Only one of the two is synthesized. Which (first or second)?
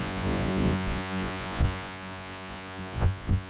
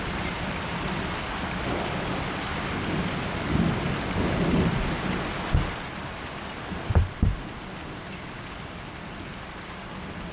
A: first